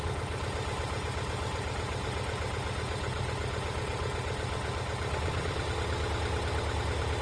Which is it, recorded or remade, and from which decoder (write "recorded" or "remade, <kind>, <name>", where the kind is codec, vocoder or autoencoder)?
recorded